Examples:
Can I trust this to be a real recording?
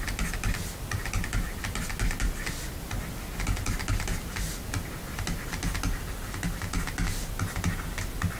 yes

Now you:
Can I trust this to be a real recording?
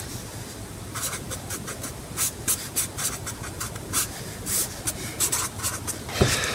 no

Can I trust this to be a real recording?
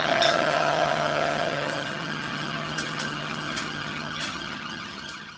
no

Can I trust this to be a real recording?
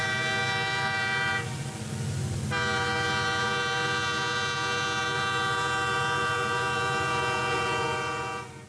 yes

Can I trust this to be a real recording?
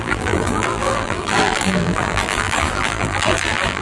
no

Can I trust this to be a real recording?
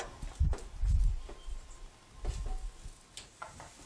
yes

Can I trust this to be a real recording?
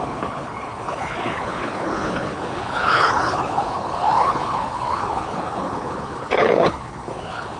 no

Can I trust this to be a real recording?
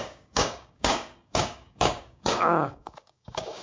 no